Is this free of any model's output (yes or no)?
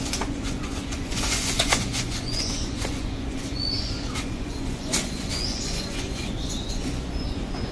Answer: no